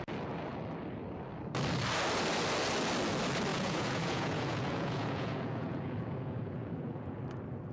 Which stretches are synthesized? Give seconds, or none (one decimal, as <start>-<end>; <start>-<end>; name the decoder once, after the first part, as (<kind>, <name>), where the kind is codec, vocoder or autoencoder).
3.5-7.2 (vocoder, Vocos)